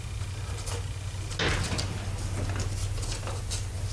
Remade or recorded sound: recorded